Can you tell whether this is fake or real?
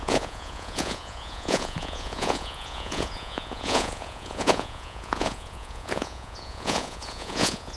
fake